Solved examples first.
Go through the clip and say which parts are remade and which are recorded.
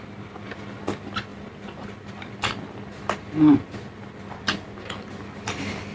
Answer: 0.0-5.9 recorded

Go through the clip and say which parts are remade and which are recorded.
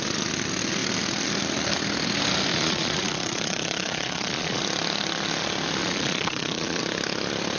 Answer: 0.0-2.5 recorded; 2.5-4.6 remade; 4.6-5.8 recorded; 5.8-6.8 remade; 6.8-7.6 recorded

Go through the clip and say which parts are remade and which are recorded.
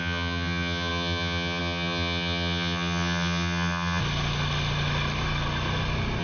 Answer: 0.0-4.0 remade; 4.0-6.2 recorded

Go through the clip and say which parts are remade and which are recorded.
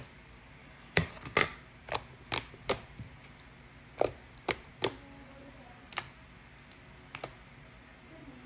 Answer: 0.0-0.6 recorded; 0.6-1.1 remade; 1.1-8.5 recorded